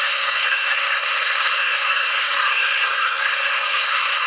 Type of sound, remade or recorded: remade